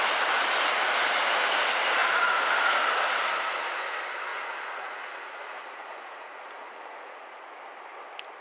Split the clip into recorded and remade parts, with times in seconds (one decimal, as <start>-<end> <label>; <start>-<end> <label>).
0.0-4.3 recorded; 4.3-7.6 remade; 7.6-8.4 recorded